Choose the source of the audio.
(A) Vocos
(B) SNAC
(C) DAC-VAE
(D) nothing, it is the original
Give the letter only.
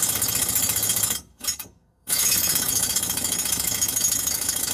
C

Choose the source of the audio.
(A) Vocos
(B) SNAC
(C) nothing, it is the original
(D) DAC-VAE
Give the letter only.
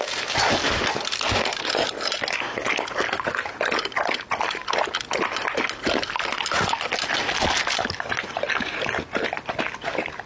C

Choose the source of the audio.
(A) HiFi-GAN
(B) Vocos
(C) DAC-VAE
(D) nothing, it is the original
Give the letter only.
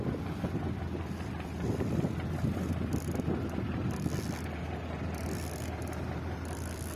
D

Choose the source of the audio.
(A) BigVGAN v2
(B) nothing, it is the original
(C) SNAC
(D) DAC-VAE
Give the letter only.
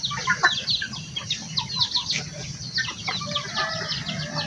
B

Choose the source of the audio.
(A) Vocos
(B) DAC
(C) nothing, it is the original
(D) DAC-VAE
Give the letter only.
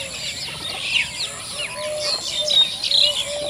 C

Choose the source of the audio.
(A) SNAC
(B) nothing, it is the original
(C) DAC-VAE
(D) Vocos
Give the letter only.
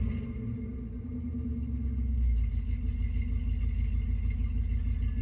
B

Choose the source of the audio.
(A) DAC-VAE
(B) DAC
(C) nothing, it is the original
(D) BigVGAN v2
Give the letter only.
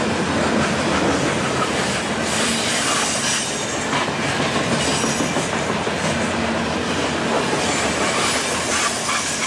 C